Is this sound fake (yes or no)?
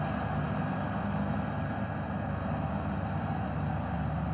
no